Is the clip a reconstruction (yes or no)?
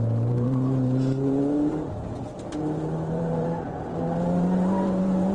yes